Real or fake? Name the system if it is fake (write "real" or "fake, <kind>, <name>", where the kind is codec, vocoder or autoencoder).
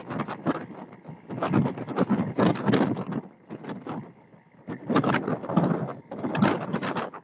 real